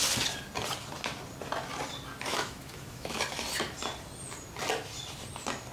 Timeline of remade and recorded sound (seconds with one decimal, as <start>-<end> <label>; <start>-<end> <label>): 0.0-2.3 recorded; 2.3-3.2 remade; 3.2-5.7 recorded